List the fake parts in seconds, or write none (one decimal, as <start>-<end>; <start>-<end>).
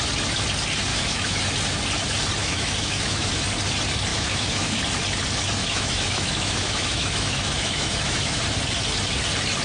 0.9-1.5; 2.4-3.3; 4.1-4.8; 5.6-8.4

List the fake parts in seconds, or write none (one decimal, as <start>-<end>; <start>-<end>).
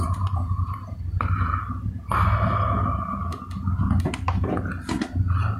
none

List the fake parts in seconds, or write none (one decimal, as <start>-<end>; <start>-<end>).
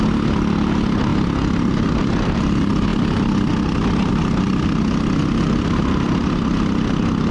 none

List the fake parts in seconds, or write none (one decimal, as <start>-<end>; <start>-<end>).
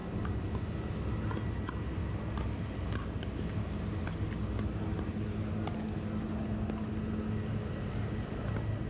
none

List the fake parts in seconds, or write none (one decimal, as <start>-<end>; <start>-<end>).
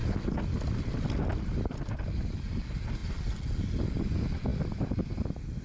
none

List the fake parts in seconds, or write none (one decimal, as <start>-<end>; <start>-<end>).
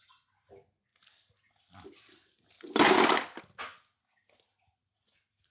none